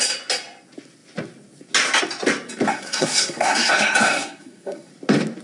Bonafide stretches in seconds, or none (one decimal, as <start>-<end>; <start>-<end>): 0.0-2.7; 4.9-5.4